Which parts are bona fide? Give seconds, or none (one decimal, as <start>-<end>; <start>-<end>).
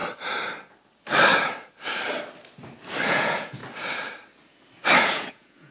0.0-3.1; 3.6-5.0